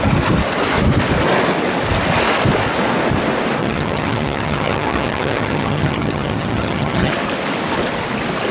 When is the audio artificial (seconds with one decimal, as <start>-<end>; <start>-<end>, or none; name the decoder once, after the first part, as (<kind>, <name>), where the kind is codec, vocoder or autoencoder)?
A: 3.6-7.1 (vocoder, HiFi-GAN)